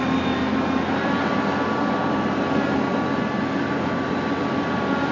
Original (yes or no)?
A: yes